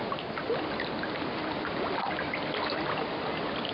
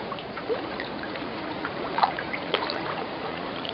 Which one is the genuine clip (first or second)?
first